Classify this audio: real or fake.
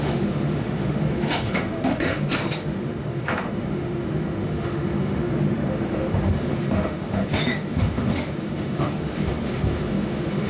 fake